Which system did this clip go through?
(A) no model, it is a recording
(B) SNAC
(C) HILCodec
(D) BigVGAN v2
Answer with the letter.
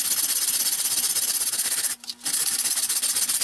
A